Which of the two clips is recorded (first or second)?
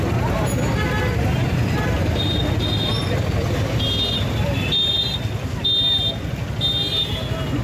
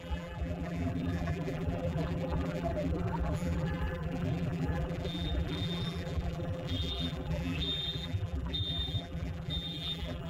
first